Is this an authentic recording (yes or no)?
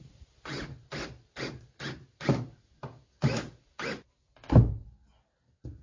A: yes